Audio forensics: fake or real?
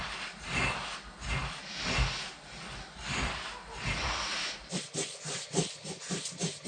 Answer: real